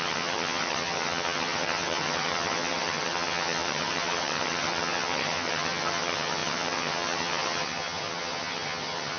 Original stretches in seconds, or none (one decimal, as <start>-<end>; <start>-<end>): none